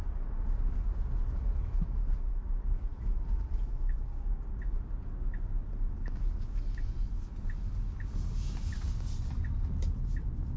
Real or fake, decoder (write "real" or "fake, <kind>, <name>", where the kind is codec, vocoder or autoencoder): real